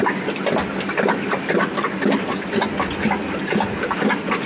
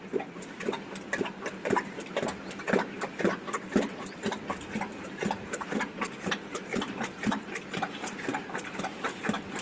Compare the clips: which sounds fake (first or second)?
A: second